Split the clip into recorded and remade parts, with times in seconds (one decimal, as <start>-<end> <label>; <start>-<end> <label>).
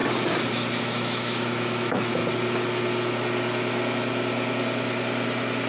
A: 0.0-0.8 recorded; 0.8-2.2 remade; 2.2-5.7 recorded